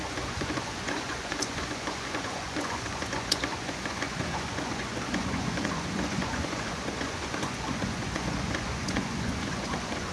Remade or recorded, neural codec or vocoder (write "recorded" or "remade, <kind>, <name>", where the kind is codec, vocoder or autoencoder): remade, vocoder, Vocos